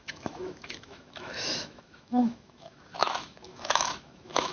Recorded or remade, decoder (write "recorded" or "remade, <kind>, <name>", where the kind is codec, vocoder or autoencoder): remade, autoencoder, DAC-VAE